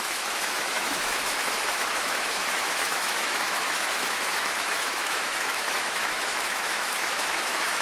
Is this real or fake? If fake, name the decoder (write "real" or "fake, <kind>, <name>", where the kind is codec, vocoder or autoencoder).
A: fake, autoencoder, DAC-VAE